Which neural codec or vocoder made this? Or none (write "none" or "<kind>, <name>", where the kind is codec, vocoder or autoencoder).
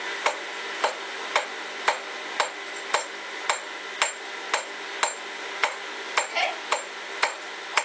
none